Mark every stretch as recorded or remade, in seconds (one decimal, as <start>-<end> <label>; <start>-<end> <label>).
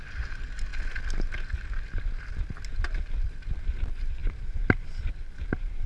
0.0-5.9 recorded